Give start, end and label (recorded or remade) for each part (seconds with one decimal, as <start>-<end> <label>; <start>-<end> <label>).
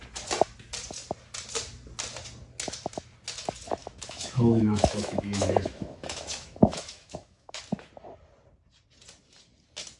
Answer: 0.0-3.8 recorded; 3.8-7.6 remade; 7.6-10.0 recorded